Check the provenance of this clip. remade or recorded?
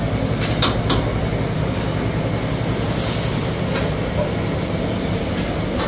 recorded